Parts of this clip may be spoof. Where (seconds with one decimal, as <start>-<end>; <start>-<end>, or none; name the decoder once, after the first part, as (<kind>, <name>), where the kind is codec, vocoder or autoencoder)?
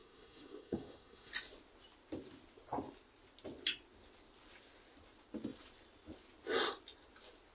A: 0.0-1.3 (codec, SNAC)